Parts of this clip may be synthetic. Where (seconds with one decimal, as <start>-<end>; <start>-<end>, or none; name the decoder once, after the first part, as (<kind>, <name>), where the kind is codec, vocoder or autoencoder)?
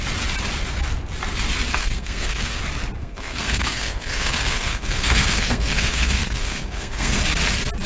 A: 1.7-2.6 (codec, SNAC); 3.0-7.2